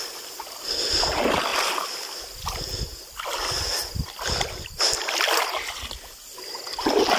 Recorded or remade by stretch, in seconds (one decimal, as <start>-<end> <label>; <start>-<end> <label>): 0.0-7.2 recorded